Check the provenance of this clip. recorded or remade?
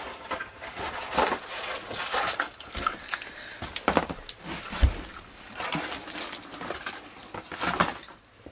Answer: recorded